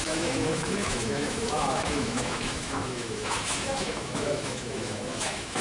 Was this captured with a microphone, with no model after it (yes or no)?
no